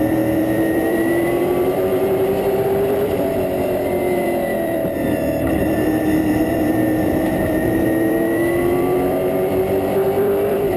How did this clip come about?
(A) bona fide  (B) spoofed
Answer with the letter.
B